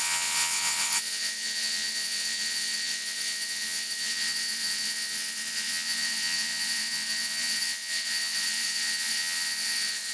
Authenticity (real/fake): fake